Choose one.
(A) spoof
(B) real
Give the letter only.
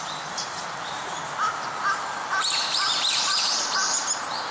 B